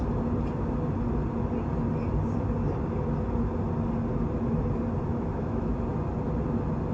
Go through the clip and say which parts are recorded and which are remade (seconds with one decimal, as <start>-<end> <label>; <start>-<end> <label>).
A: 0.0-5.1 recorded; 5.1-5.8 remade; 5.8-6.9 recorded